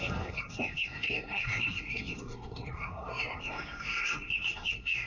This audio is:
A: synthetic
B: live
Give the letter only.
A